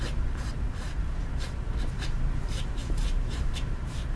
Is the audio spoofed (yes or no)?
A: yes